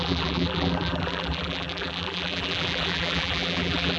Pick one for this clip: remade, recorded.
remade